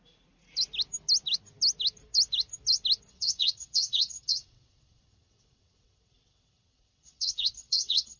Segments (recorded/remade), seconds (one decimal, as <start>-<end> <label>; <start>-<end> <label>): 0.0-3.1 recorded; 3.1-8.2 remade